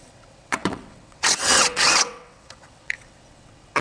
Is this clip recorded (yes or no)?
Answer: no